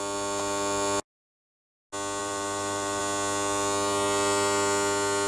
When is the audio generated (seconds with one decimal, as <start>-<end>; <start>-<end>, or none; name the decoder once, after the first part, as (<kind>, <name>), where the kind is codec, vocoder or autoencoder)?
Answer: 2.2-3.0 (vocoder, BigVGAN v2)